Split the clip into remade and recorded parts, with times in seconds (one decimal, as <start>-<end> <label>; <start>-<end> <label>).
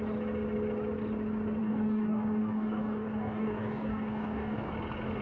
0.0-1.6 recorded; 1.6-4.7 remade; 4.7-5.2 recorded